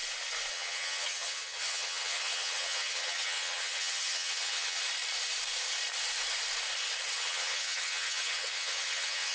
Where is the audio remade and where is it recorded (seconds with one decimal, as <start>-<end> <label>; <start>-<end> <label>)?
0.0-0.5 recorded; 0.5-4.8 remade; 4.8-7.1 recorded; 7.1-9.3 remade